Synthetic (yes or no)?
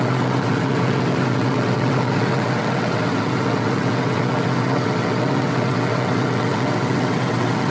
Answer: yes